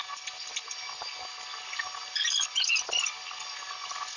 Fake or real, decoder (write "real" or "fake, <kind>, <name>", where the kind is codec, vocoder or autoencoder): real